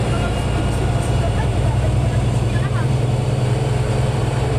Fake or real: fake